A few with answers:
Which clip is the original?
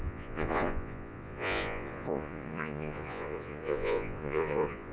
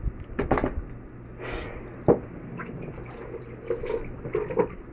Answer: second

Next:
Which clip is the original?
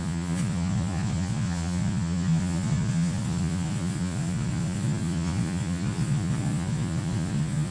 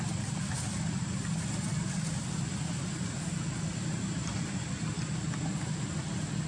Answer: second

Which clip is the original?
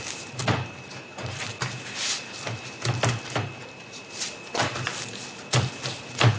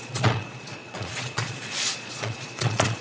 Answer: first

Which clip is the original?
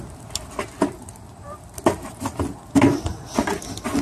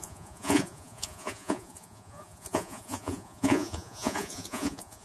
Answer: first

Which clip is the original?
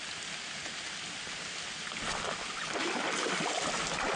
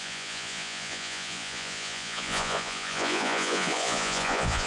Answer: first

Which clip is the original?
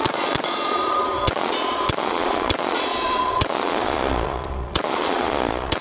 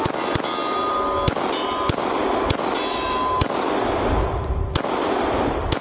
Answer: second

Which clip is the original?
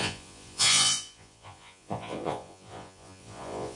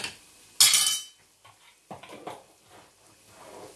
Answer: second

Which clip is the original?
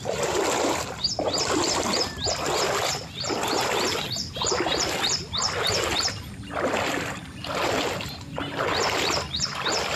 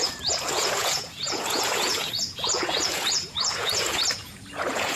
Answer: first